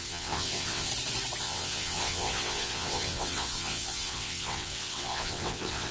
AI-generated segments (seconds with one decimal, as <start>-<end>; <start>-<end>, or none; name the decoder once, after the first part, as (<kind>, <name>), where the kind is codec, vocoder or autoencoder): 0.0-0.9 (vocoder, WaveNeXt); 1.4-5.9